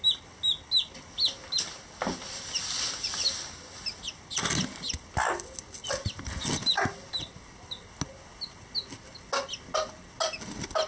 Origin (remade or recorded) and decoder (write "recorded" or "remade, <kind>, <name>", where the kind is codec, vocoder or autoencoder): recorded